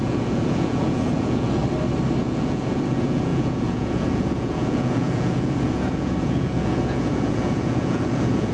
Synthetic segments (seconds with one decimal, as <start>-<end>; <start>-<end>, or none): 0.0-1.6; 2.2-8.5